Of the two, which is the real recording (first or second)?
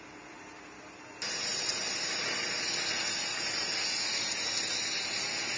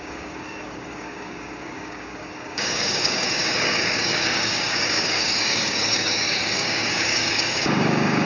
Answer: first